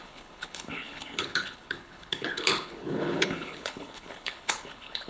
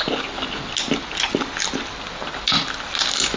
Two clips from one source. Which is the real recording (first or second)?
second